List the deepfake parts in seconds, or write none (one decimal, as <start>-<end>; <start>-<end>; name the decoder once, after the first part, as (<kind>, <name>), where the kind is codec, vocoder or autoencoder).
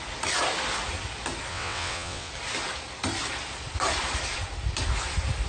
1.5-2.3 (vocoder, WaveNeXt)